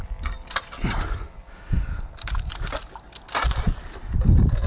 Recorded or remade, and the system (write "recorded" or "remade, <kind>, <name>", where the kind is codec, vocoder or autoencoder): recorded